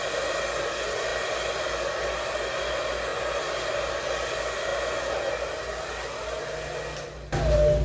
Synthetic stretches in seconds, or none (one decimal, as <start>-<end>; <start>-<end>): none